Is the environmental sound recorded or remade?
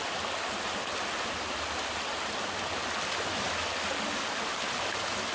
recorded